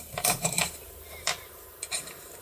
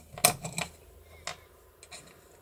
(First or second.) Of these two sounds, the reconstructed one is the first